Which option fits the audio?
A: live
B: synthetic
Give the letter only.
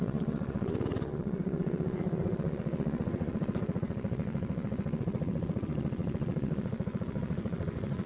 B